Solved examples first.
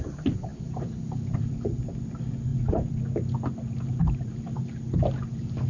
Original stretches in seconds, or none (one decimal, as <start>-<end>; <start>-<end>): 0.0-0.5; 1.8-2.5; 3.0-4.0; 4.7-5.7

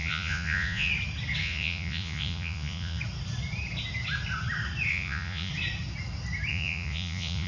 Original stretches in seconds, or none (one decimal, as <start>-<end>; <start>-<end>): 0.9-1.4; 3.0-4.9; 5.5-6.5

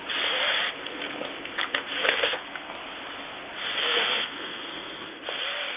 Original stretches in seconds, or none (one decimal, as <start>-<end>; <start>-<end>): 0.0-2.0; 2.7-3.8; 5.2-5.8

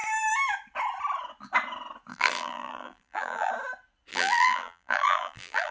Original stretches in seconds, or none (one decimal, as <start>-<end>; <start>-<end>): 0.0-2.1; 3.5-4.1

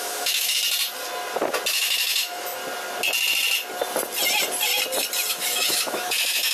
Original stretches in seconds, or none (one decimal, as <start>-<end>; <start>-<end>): 0.6-1.7; 2.6-5.3

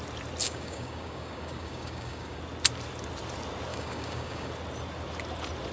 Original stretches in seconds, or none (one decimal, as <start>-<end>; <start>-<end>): 0.0-0.4; 2.4-3.7; 4.5-5.7